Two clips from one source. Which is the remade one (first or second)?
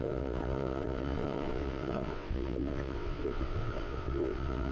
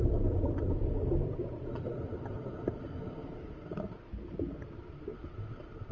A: first